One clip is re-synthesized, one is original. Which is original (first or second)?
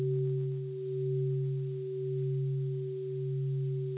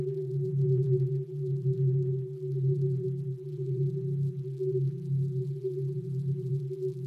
first